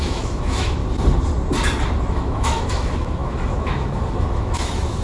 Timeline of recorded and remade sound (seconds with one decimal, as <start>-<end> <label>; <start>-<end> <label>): 0.0-0.8 remade; 0.8-2.1 recorded; 2.1-5.0 remade